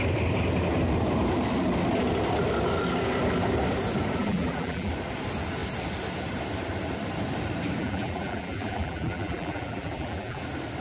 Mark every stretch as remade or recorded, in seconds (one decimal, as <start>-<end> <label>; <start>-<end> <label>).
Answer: 0.0-4.2 recorded; 4.2-4.9 remade; 4.9-7.8 recorded; 7.8-10.4 remade; 10.4-10.8 recorded